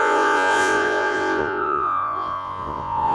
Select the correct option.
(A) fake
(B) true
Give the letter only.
A